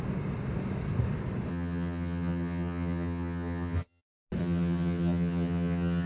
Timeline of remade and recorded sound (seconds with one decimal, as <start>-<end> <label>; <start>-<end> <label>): 0.0-1.5 recorded; 1.5-4.0 remade; 4.0-4.4 recorded; 4.4-6.1 remade